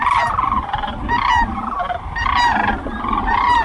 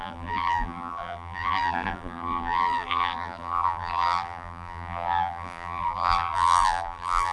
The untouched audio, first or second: first